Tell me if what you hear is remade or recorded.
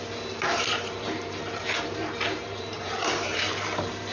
remade